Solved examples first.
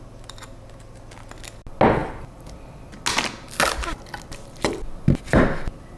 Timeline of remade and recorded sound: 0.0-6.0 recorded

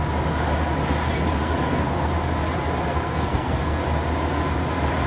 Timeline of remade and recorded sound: 0.0-1.4 recorded; 1.4-2.1 remade; 2.1-2.9 recorded; 2.9-3.8 remade; 3.8-5.1 recorded

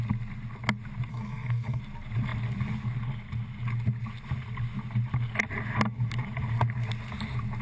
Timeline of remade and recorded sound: 0.0-1.1 recorded; 1.1-1.8 remade; 1.8-7.6 recorded

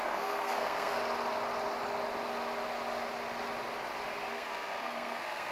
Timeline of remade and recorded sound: 0.0-1.0 remade; 1.0-4.3 recorded; 4.3-5.5 remade

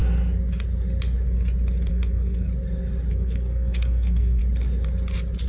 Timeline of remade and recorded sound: 0.0-1.9 recorded; 1.9-2.5 remade; 2.5-3.1 recorded; 3.1-4.4 remade; 4.4-5.5 recorded

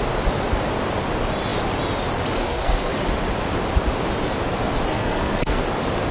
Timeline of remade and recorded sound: 0.0-2.4 recorded; 2.4-2.9 remade; 2.9-4.9 recorded; 4.9-5.6 remade; 5.6-6.1 recorded

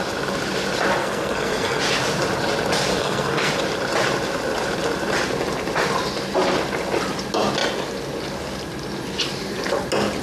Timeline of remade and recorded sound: 0.0-1.0 recorded; 1.0-1.8 remade; 1.8-2.9 recorded; 2.9-3.5 remade; 3.5-10.2 recorded

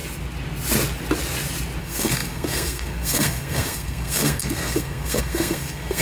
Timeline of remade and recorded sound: 0.0-1.8 recorded; 1.8-6.0 remade